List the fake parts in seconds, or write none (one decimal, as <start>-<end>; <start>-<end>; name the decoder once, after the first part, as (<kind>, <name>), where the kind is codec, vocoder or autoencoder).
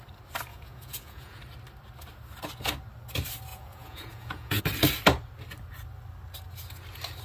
0.5-1.4 (vocoder, Vocos); 3.5-4.6